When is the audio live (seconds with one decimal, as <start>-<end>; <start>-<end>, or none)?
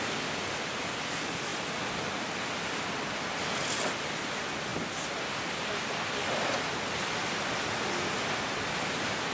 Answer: 0.0-9.3